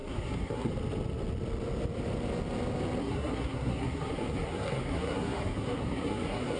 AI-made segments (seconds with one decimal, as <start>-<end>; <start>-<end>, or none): 0.0-0.7; 3.0-6.6

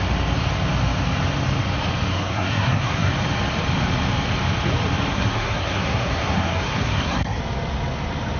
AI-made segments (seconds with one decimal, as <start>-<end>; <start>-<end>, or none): 2.1-3.1; 5.1-7.4

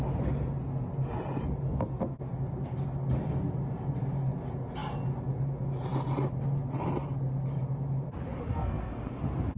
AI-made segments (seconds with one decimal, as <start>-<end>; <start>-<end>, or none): 8.5-9.2